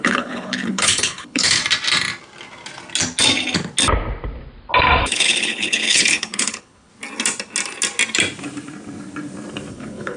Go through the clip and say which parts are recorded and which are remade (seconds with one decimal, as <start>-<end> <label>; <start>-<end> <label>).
0.0-1.6 remade; 1.6-5.0 recorded; 5.0-6.9 remade; 6.9-9.7 recorded; 9.7-10.2 remade